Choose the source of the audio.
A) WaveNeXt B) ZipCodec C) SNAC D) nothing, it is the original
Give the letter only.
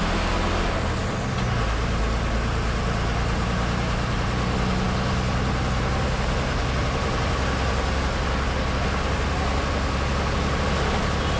D